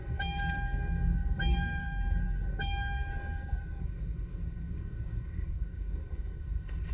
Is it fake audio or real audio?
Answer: fake